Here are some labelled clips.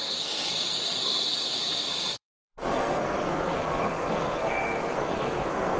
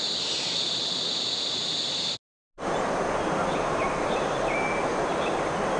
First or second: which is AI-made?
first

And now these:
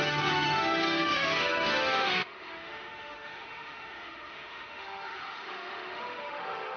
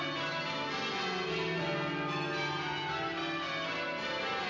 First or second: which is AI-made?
first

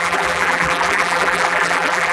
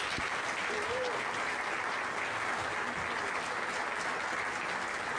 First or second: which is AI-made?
first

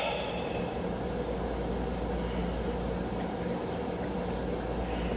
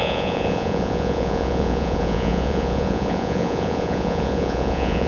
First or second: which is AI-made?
second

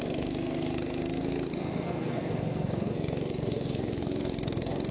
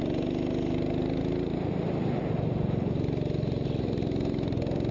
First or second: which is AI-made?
first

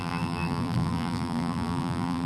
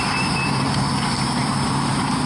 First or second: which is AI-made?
first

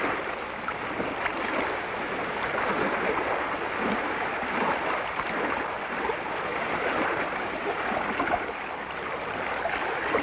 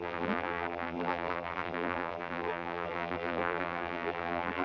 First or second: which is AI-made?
second